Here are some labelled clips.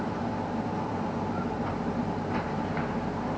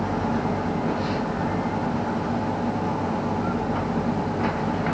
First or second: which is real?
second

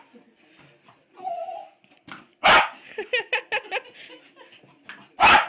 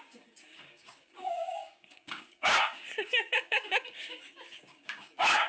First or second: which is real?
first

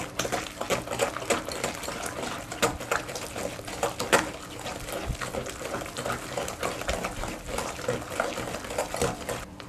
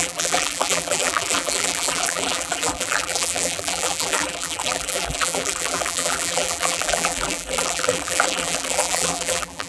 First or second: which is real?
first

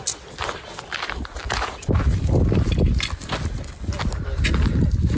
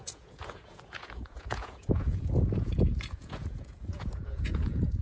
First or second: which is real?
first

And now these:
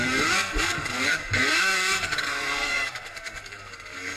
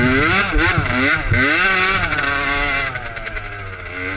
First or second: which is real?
second